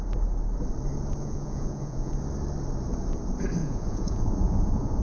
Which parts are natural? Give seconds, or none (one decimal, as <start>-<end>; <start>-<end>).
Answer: 0.0-1.2; 2.1-3.6